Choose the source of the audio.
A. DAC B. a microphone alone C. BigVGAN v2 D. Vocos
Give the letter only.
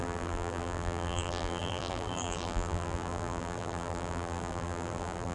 C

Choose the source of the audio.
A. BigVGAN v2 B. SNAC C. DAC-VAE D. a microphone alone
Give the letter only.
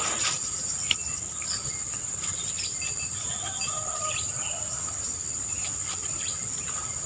A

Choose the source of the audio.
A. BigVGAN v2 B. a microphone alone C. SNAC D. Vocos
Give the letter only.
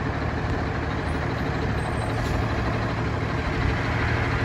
B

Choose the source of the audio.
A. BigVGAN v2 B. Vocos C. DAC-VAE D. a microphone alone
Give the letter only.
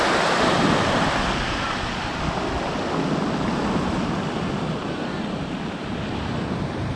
D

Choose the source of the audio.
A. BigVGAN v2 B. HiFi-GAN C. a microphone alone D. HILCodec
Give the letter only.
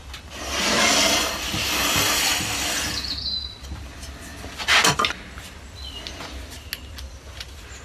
C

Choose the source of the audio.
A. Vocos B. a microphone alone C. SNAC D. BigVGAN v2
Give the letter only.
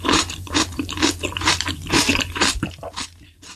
D